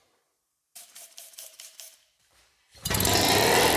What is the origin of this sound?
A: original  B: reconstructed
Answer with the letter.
B